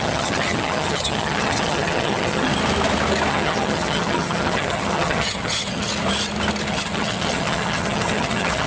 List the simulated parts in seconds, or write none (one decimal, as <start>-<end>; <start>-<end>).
0.0-2.5; 3.3-5.9; 6.7-8.7